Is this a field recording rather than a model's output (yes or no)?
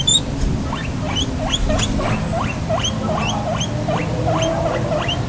yes